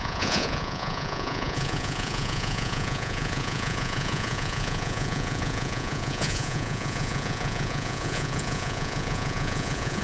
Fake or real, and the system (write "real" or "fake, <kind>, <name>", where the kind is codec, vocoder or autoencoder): fake, vocoder, Vocos